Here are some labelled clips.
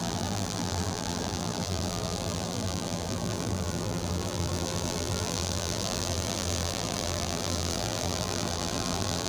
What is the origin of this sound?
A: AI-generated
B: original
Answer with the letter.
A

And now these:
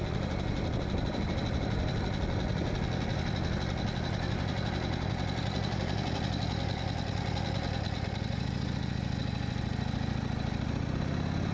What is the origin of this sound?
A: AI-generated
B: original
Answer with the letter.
B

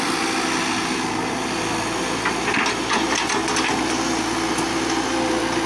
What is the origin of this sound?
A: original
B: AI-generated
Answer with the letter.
A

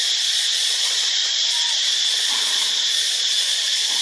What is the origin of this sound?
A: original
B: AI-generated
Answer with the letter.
B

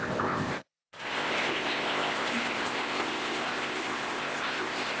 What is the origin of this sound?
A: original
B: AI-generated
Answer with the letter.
B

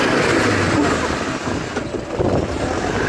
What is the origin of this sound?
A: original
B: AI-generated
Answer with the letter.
A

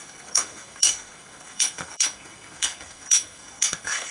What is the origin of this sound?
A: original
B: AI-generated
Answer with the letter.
B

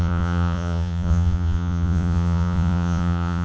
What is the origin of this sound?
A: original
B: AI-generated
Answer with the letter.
B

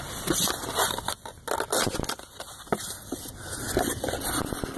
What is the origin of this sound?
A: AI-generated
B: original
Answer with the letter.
B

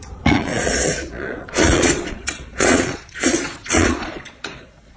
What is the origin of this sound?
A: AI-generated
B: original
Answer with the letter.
A